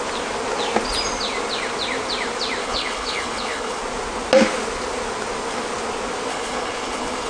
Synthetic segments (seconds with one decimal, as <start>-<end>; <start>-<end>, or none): 2.6-3.8; 6.3-7.3